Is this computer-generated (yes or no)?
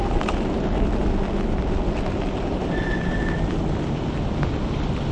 no